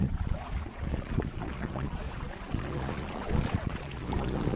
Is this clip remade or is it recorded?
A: remade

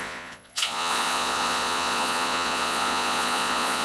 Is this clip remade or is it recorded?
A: remade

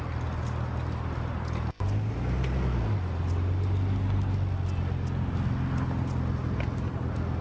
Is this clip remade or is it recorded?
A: recorded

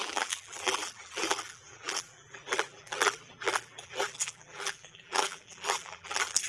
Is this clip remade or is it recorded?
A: remade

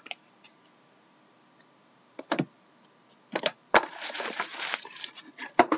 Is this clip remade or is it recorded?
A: remade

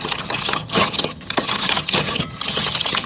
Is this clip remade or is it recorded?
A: remade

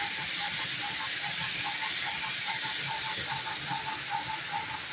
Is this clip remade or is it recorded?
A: recorded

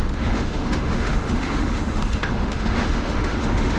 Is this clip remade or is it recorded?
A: remade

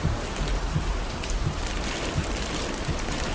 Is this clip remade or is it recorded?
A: recorded